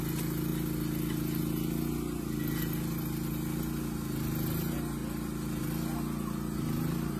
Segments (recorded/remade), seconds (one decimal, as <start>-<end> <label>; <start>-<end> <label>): 0.0-7.2 recorded